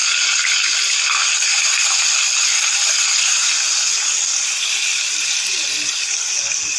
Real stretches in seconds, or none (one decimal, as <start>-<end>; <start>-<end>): 1.0-6.8